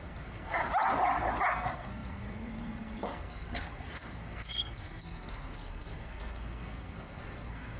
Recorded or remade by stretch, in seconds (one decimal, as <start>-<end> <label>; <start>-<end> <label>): 0.0-0.6 remade; 0.6-1.5 recorded; 1.5-7.8 remade